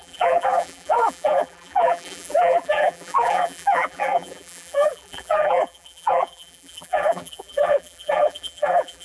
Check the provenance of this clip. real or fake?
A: fake